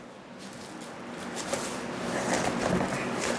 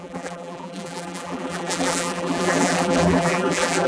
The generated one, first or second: second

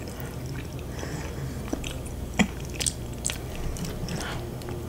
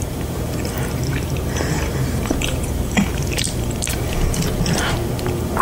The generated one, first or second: second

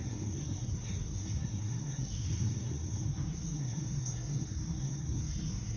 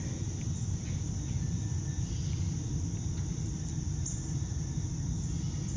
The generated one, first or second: first